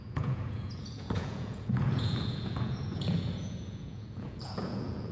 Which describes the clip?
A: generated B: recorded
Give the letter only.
A